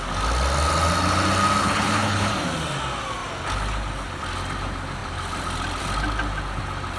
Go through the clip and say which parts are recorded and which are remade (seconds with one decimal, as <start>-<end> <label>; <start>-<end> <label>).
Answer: 0.0-1.6 recorded; 1.6-2.3 remade; 2.3-7.0 recorded